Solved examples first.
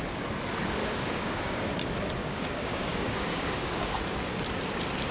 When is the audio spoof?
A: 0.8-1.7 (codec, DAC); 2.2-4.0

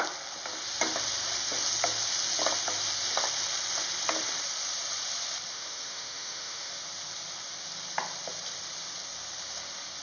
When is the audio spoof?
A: 5.5-6.7 (autoencoder, DAC-VAE)

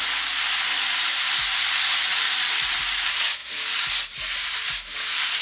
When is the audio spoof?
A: 2.1-2.8 (vocoder, BigVGAN v2)

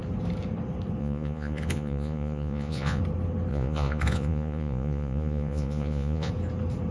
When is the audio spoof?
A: 1.0-3.0 (vocoder, Vocos); 3.5-6.3